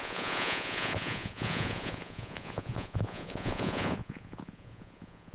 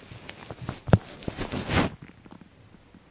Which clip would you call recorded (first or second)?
second